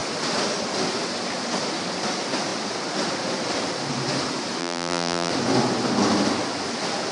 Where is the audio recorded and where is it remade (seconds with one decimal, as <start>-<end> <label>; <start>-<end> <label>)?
0.0-4.6 recorded; 4.6-5.3 remade; 5.3-7.1 recorded

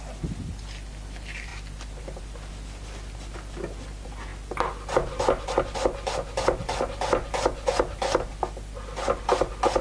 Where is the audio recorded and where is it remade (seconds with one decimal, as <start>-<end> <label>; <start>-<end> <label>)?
0.0-9.8 recorded

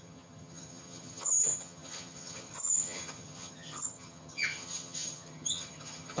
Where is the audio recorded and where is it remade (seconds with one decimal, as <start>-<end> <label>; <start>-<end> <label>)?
0.0-6.2 remade

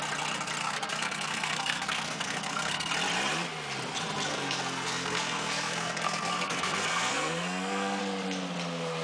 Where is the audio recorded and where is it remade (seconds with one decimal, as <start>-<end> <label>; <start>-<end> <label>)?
0.0-0.6 recorded; 0.6-2.9 remade; 2.9-4.3 recorded; 4.3-8.0 remade; 8.0-9.0 recorded

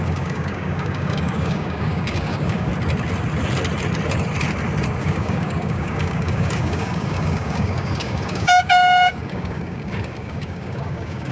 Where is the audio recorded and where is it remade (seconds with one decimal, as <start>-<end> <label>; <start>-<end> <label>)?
0.0-2.7 remade; 2.7-5.0 recorded; 5.0-11.3 remade